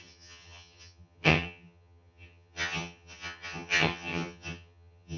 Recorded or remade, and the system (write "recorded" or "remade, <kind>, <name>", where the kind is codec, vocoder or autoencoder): remade, vocoder, HiFi-GAN